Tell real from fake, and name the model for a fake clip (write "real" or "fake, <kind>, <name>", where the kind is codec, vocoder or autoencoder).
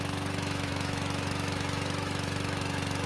fake, autoencoder, DAC-VAE